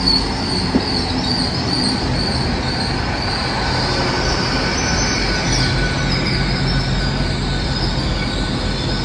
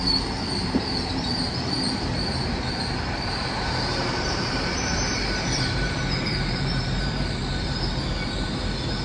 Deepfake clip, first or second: second